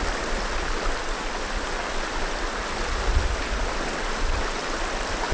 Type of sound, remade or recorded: recorded